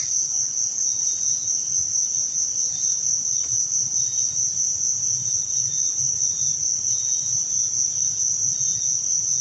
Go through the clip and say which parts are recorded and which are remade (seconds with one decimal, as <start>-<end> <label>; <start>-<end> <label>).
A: 0.0-9.4 recorded